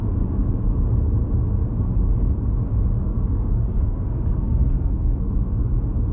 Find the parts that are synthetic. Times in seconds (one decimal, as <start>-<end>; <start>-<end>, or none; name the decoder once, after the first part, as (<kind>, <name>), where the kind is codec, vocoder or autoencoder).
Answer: 3.0-5.3 (codec, SNAC)